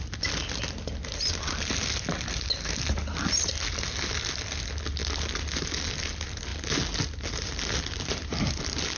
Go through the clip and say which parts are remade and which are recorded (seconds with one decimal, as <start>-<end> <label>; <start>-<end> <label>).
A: 0.0-9.0 recorded